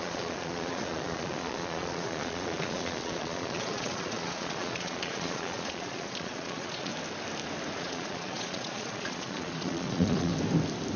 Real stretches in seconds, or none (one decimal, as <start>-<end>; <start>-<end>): 6.9-7.8; 10.3-11.0